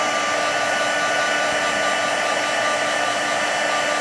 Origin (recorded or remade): recorded